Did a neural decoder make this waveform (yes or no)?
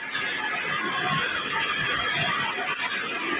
no